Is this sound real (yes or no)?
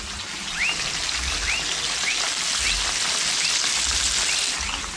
yes